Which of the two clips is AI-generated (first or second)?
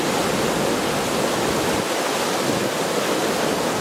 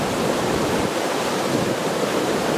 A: second